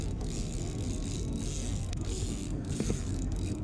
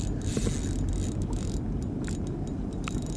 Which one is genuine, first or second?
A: second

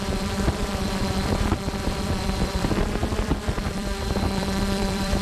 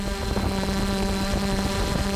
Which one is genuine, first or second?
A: second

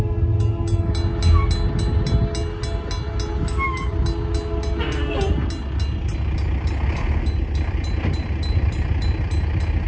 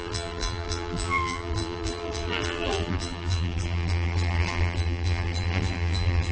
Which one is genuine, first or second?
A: first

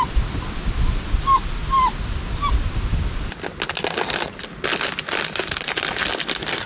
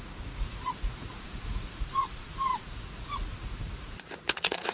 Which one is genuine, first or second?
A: first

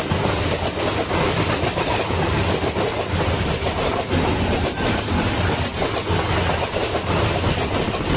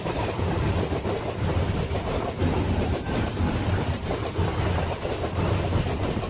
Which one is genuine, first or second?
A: first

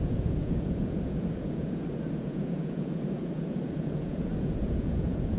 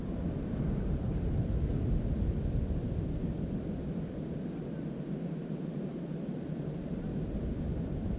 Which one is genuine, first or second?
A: second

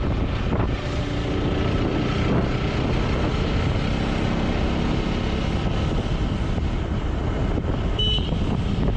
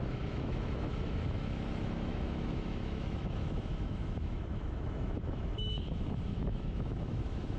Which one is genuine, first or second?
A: first